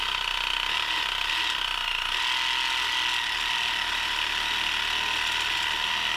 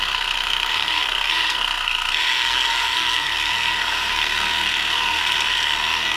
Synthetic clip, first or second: second